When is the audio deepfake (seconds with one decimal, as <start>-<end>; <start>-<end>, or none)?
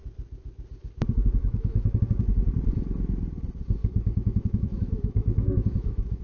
1.4-2.0; 3.8-6.2